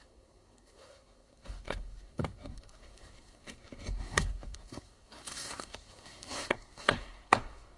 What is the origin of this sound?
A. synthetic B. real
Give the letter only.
A